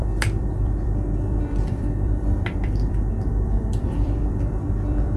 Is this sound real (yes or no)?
no